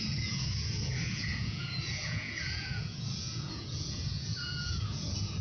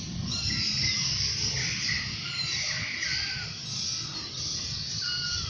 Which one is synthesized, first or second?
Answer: first